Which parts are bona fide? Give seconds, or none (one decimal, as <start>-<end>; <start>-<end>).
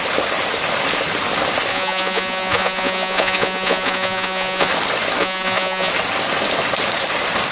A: 0.0-1.7; 4.7-5.2; 5.9-7.5